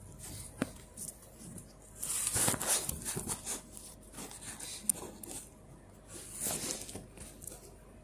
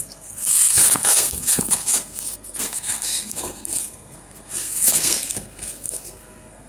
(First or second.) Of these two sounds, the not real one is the second